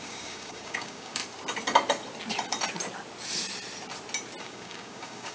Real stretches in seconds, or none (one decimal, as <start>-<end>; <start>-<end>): 1.2-4.4